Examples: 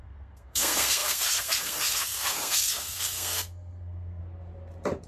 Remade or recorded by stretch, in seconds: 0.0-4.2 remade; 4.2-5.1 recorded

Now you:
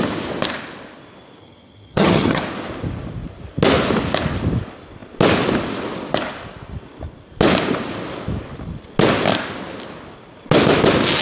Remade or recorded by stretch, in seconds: 0.0-1.4 recorded; 1.4-2.4 remade; 2.4-11.2 recorded

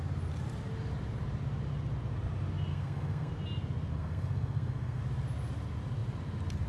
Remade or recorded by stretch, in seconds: 0.0-2.7 recorded; 2.7-3.3 remade; 3.3-3.9 recorded; 3.9-5.0 remade; 5.0-6.7 recorded

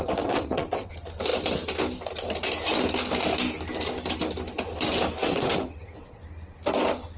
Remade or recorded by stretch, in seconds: 0.0-0.9 remade; 0.9-5.2 recorded; 5.2-6.2 remade; 6.2-7.2 recorded

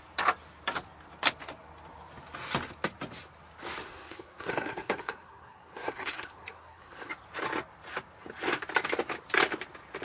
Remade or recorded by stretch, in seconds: 0.0-3.9 recorded; 3.9-7.1 remade; 7.1-10.0 recorded

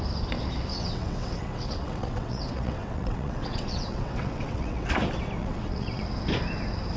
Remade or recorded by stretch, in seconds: 0.0-0.7 recorded; 0.7-4.9 remade; 4.9-5.4 recorded; 5.4-6.0 remade; 6.0-7.0 recorded